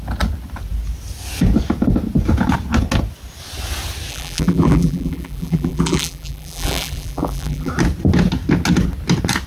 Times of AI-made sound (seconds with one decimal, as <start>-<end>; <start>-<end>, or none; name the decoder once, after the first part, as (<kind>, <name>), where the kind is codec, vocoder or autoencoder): 4.1-7.7 (vocoder, BigVGAN v2)